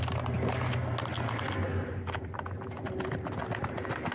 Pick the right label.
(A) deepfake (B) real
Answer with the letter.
B